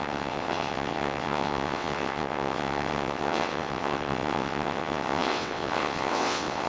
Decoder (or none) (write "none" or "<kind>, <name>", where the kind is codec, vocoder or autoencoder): vocoder, WaveNeXt